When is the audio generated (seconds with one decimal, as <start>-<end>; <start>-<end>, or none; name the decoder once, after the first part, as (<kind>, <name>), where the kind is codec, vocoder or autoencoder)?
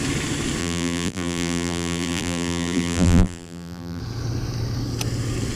0.6-4.0 (vocoder, BigVGAN v2)